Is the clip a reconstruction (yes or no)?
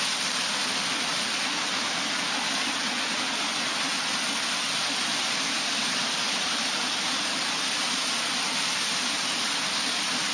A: no